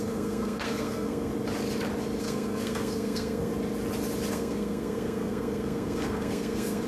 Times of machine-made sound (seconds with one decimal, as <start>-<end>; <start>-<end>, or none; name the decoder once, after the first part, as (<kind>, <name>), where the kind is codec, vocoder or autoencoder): 0.0-1.3 (codec, SNAC); 2.2-3.5; 4.3-6.9